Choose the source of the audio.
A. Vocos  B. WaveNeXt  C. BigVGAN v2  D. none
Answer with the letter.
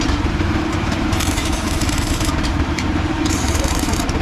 C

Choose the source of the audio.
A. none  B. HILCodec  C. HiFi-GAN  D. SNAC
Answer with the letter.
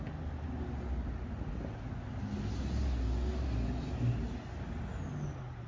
A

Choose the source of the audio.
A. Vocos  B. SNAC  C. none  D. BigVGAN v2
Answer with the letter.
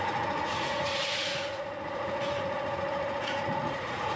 A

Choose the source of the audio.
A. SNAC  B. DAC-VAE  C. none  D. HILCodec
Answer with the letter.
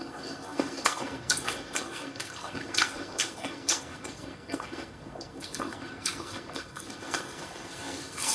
A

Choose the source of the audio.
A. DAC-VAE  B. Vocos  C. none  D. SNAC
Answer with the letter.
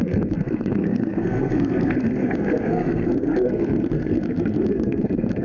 D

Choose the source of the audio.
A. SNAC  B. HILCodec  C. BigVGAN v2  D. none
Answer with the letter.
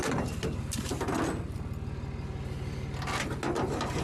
D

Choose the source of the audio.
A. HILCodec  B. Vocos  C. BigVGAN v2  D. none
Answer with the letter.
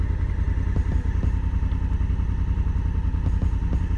D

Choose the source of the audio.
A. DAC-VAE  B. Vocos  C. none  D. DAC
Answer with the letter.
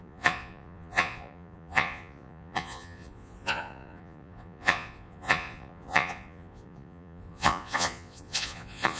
B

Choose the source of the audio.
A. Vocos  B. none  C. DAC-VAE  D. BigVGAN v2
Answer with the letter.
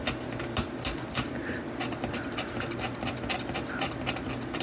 B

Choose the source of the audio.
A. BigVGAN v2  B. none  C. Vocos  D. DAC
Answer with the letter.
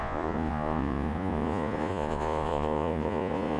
C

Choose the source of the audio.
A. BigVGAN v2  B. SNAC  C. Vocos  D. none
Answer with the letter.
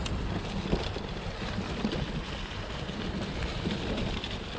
D